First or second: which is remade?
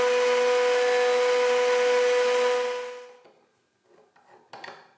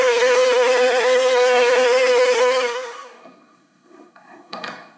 second